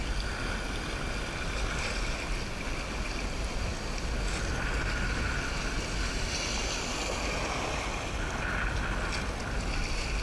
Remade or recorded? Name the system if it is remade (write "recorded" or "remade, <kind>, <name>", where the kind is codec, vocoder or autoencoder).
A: recorded